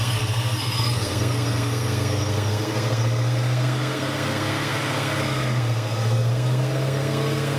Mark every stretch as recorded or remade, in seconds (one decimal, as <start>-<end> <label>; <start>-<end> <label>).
0.0-7.6 remade